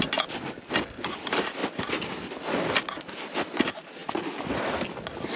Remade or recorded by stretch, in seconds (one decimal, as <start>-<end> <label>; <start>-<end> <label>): 0.0-5.4 recorded